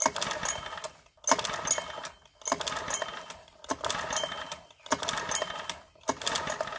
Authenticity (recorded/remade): recorded